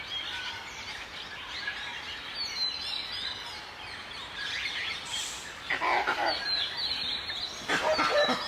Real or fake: real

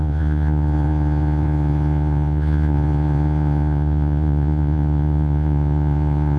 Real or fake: fake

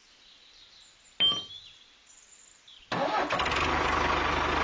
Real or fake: real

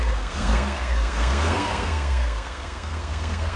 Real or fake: fake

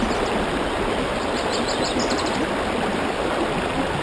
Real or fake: real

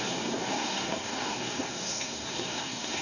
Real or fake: fake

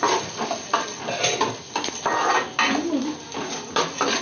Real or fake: real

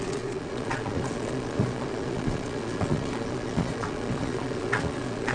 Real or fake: fake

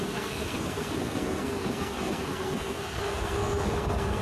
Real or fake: fake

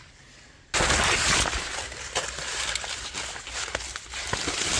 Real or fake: real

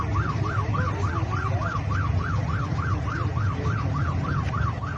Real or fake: real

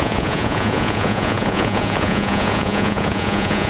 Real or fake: fake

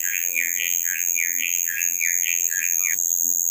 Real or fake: fake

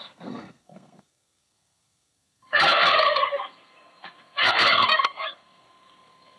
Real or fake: fake